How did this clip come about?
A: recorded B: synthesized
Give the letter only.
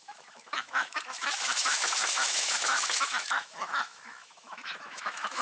B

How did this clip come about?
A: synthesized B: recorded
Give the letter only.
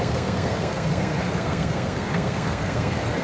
A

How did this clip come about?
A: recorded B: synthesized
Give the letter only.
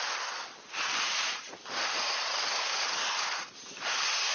B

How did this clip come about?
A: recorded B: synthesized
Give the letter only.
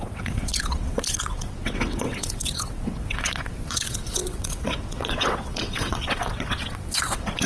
B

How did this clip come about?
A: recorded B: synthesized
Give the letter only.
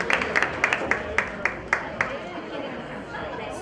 A